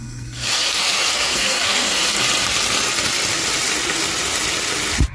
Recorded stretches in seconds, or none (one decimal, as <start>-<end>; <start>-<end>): 2.2-5.1